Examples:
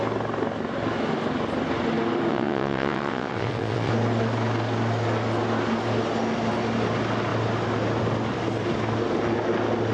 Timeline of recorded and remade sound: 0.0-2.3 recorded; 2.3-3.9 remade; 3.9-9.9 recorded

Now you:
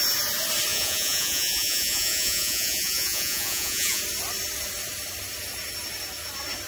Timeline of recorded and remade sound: 0.0-0.7 recorded; 0.7-4.0 remade; 4.0-6.7 recorded

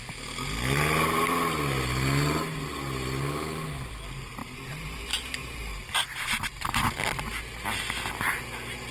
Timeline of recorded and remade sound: 0.0-4.4 recorded; 4.4-5.0 remade; 5.0-5.4 recorded; 5.4-5.9 remade; 5.9-8.9 recorded